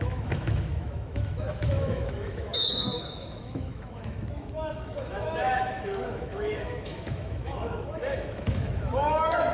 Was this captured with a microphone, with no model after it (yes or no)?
no